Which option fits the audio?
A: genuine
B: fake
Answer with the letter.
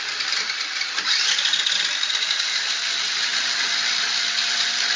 A